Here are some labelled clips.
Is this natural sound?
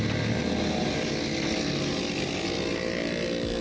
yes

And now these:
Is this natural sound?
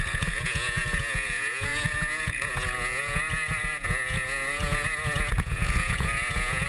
no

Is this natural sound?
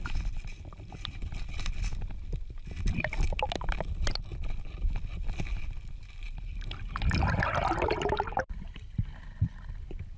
yes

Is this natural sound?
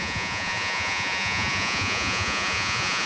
no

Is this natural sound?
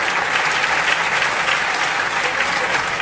yes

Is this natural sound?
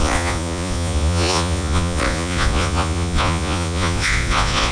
no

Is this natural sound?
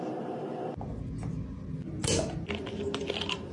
yes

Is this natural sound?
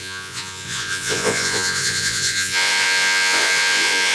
no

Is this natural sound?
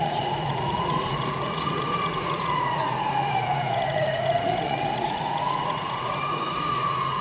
no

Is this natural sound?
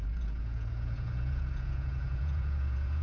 no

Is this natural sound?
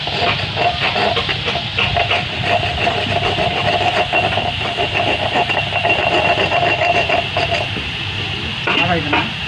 yes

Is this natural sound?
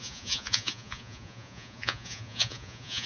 no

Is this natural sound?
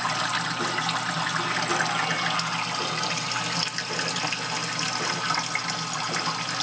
yes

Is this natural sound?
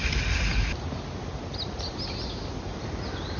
yes